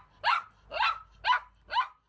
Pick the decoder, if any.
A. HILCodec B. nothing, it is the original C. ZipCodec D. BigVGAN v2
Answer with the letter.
B